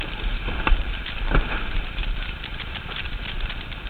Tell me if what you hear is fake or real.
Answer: fake